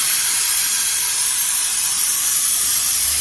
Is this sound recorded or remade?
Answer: remade